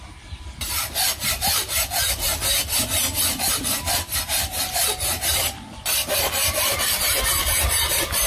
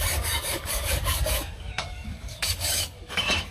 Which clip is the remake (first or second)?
second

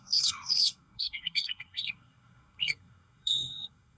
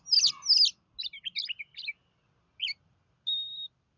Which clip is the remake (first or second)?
first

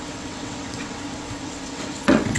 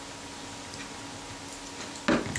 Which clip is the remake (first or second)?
first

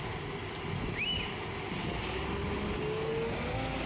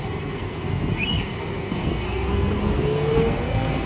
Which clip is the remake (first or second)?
second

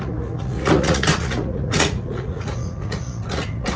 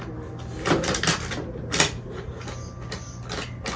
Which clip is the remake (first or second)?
first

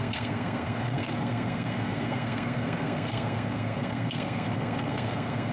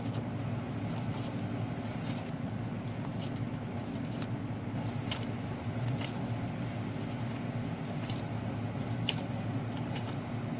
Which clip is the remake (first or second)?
first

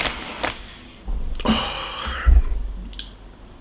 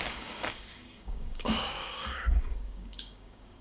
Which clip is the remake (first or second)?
second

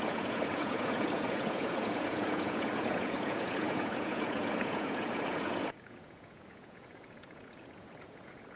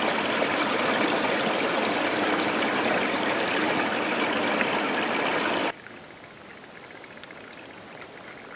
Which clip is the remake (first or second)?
first